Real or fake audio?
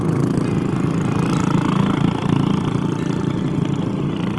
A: real